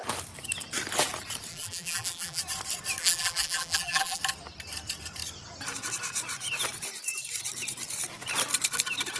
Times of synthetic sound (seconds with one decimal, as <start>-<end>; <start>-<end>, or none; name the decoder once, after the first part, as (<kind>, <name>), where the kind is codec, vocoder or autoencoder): 1.5-2.4 (vocoder, BigVGAN v2); 3.0-4.2